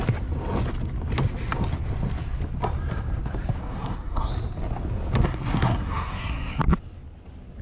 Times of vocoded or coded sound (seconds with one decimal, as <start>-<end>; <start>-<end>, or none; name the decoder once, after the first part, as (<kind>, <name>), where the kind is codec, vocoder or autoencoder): 3.6-4.3 (codec, SNAC); 5.2-6.5